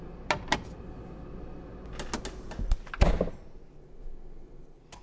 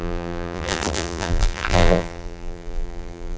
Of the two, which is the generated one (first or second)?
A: second